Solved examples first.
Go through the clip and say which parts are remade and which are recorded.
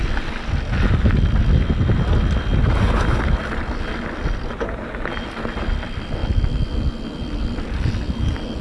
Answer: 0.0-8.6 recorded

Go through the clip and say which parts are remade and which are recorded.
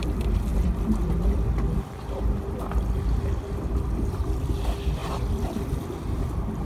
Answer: 0.0-5.0 recorded; 5.0-5.7 remade; 5.7-6.6 recorded